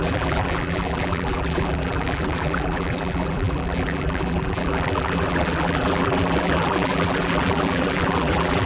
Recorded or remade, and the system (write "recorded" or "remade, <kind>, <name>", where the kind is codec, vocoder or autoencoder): remade, vocoder, BigVGAN v2